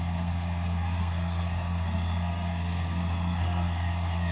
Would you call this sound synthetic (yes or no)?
yes